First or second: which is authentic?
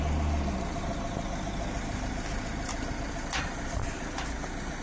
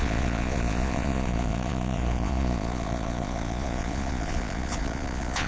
first